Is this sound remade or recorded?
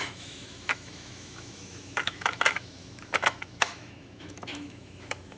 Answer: remade